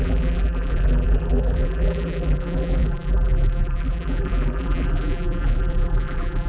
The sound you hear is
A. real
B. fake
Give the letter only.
B